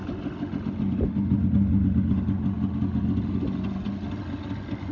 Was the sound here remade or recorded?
recorded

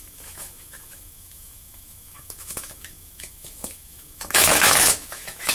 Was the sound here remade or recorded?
remade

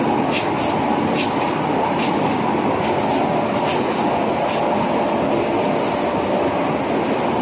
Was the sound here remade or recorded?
recorded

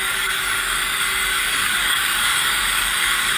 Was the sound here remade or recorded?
remade